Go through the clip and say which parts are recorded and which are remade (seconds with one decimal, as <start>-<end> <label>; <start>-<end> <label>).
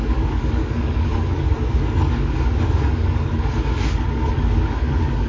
0.0-5.3 remade